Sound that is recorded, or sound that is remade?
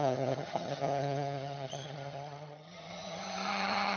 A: remade